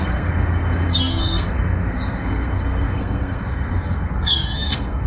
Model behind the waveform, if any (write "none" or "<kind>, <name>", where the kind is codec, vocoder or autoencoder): codec, SNAC